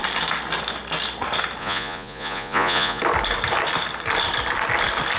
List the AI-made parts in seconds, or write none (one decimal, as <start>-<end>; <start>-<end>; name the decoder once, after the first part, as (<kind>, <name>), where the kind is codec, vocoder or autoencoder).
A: 1.6-3.0 (vocoder, Vocos)